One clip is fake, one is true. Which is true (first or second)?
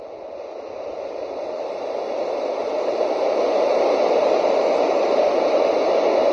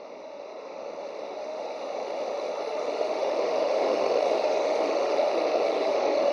first